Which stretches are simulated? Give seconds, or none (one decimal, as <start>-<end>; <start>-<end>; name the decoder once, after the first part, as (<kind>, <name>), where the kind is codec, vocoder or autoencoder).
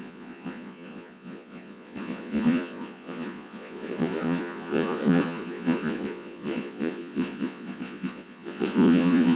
0.0-9.4 (vocoder, Vocos)